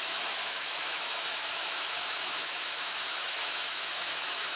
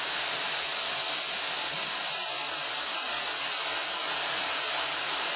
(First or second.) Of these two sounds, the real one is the second